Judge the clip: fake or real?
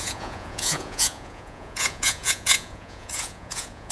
fake